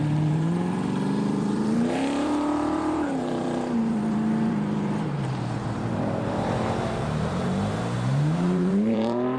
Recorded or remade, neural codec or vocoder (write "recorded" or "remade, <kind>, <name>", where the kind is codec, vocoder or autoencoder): remade, vocoder, BigVGAN v2